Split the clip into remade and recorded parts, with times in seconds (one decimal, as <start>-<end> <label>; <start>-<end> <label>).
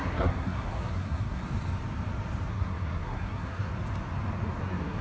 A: 0.0-1.4 remade; 1.4-2.5 recorded; 2.5-3.7 remade; 3.7-4.6 recorded; 4.6-5.0 remade